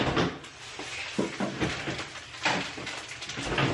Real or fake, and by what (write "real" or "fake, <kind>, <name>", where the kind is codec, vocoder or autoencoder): real